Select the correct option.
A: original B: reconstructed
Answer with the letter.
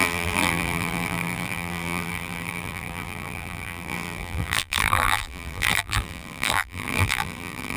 B